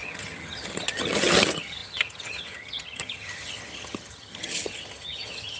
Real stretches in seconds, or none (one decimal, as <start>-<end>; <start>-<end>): none